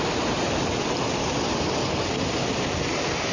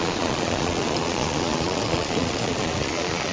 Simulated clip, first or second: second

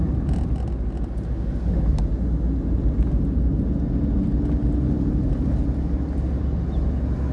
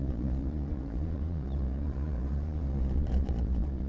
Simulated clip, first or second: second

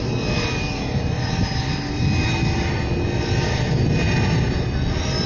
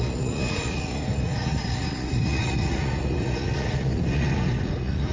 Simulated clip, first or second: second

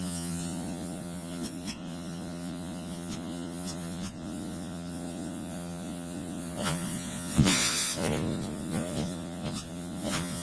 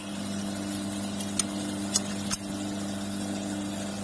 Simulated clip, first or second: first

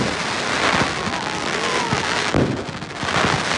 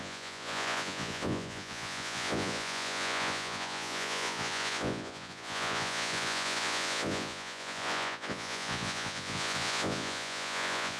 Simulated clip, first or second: second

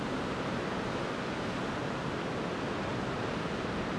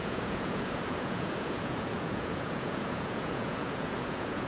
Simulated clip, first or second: second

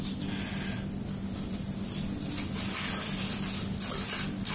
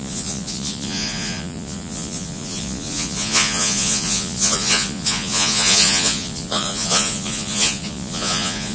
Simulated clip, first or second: second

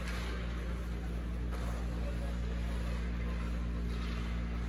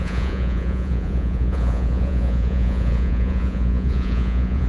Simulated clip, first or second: second